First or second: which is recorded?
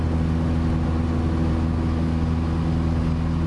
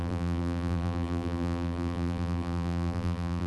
first